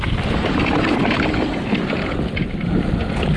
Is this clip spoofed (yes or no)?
no